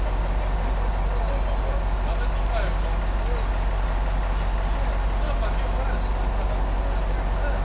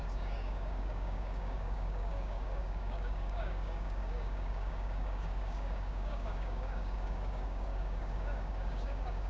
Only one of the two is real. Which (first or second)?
first